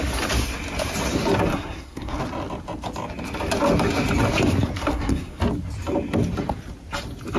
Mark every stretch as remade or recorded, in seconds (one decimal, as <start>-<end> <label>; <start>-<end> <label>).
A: 0.0-1.5 recorded; 1.5-2.2 remade; 2.2-4.8 recorded; 4.8-5.4 remade; 5.4-7.4 recorded